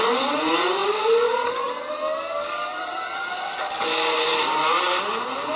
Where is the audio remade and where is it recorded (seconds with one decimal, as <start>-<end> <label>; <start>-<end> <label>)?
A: 0.0-0.8 recorded; 0.8-1.5 remade; 1.5-2.7 recorded; 2.7-3.6 remade; 3.6-5.6 recorded